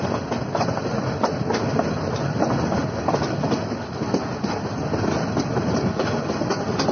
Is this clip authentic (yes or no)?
yes